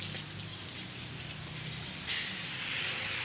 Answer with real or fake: real